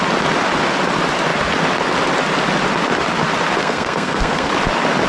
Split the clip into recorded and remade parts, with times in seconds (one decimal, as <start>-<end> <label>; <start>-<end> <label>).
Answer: 0.0-3.6 recorded; 3.6-4.5 remade; 4.5-5.1 recorded